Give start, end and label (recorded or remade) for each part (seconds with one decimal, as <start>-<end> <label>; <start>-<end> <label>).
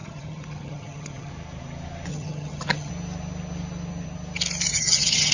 0.0-1.3 remade; 1.3-2.1 recorded; 2.1-2.9 remade; 2.9-4.7 recorded; 4.7-5.3 remade